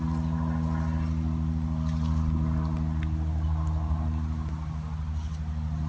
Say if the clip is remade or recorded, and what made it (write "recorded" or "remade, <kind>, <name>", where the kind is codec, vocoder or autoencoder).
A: recorded